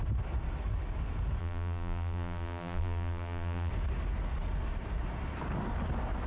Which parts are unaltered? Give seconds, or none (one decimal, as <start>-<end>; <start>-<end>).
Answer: 0.0-1.4; 3.7-6.3